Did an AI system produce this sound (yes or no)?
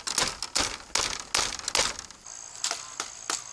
no